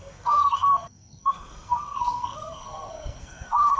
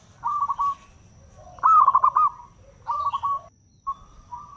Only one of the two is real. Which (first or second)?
second